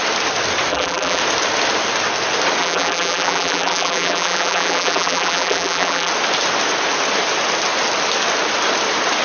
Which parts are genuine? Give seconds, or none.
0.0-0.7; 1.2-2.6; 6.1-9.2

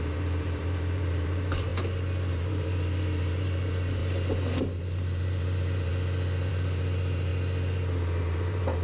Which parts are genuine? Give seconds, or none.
1.7-2.3; 4.0-4.6; 5.9-6.5; 7.3-8.2

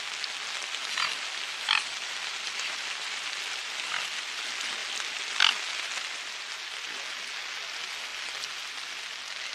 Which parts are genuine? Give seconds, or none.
0.0-0.8; 4.0-8.1; 8.7-9.5

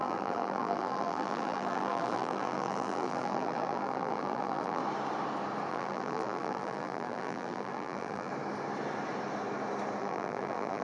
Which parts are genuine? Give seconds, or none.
4.8-5.7; 8.3-10.0

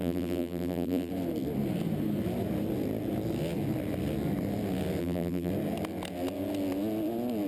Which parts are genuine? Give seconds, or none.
1.1-5.0; 5.5-7.5